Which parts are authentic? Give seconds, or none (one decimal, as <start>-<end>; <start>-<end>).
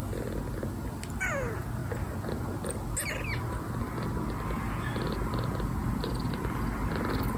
0.0-7.4